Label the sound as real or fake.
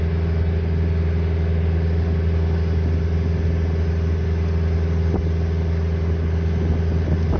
real